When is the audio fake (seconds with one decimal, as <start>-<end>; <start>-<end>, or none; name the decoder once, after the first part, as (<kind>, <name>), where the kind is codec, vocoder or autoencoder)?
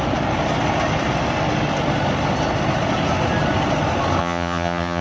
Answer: 4.2-5.0 (vocoder, HiFi-GAN)